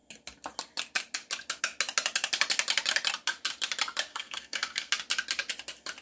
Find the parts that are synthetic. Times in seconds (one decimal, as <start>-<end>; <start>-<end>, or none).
4.1-4.9